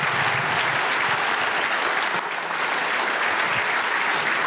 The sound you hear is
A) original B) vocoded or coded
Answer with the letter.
A